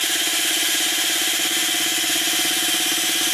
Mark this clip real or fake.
fake